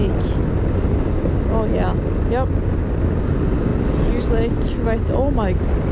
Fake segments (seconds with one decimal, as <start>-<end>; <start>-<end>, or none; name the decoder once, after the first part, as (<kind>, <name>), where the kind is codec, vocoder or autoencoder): none